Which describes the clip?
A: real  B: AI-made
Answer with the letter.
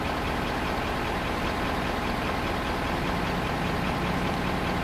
A